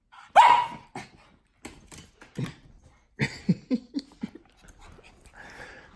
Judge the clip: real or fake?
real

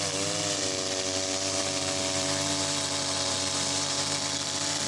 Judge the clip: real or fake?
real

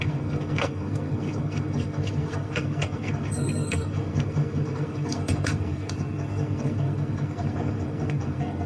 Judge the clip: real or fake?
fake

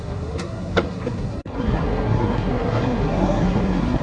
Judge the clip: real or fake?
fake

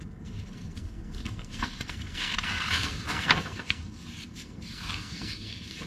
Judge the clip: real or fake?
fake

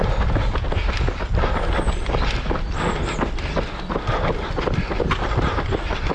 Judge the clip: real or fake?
real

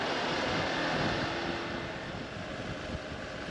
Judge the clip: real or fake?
real